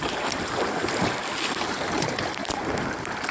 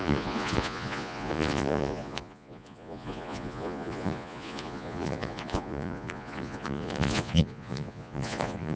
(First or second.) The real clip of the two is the first